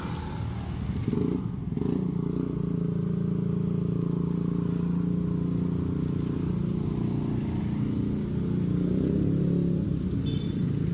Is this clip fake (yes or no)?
no